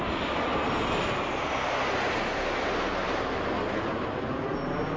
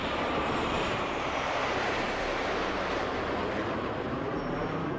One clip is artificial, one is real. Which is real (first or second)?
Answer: first